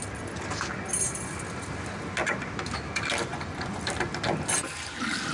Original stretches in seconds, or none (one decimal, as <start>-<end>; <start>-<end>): 0.0-3.3; 3.8-5.3